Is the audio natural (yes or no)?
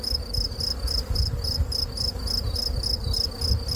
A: yes